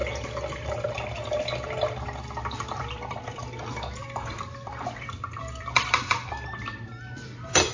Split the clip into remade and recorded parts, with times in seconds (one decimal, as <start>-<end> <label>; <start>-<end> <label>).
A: 0.0-2.4 recorded; 2.4-3.4 remade; 3.4-4.0 recorded; 4.0-7.7 remade